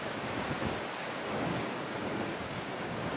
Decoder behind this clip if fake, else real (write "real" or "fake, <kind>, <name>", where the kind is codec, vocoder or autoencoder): fake, codec, DAC